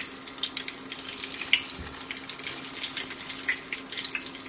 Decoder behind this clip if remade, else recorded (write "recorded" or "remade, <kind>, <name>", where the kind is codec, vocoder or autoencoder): recorded